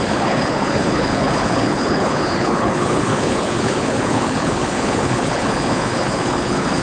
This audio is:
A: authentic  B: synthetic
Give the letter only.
B